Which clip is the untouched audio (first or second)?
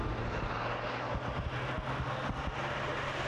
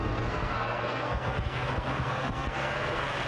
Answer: first